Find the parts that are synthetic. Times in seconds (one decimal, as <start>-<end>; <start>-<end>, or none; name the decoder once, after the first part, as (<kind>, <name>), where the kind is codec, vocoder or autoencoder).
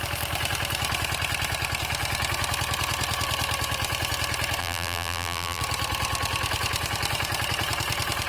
4.6-5.6 (vocoder, BigVGAN v2)